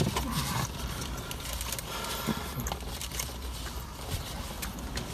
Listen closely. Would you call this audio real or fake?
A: real